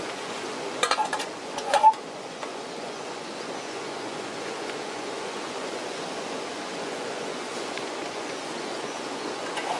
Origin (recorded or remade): remade